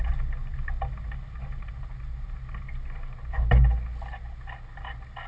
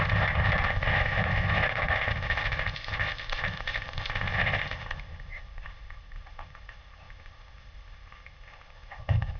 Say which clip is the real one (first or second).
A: first